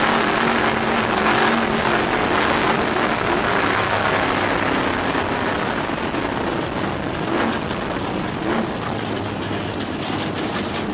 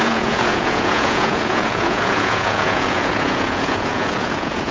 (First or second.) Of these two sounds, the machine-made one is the second